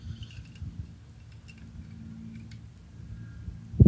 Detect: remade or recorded recorded